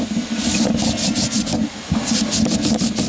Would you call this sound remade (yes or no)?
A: no